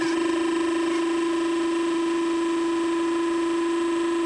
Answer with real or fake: real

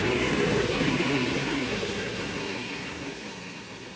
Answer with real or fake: fake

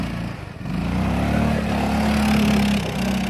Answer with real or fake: real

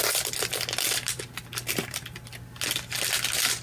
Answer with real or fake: real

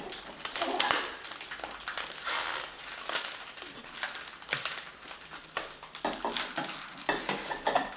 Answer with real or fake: real